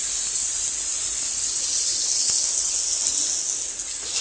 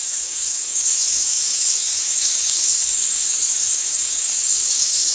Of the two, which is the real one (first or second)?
first